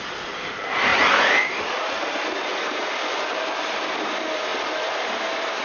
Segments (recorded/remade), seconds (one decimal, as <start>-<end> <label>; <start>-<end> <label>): 0.0-5.6 remade